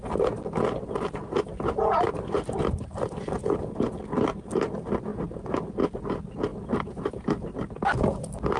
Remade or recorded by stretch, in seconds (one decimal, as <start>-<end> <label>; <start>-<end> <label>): 0.0-6.5 recorded; 6.5-7.1 remade; 7.1-8.6 recorded